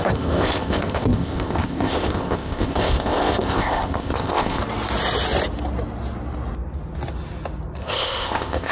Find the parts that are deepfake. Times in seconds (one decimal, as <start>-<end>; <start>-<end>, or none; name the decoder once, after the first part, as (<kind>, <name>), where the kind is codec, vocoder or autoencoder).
0.0-4.6 (codec, ZipCodec); 7.8-8.7